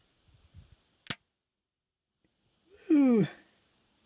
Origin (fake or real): real